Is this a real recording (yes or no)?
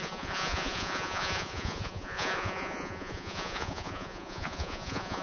no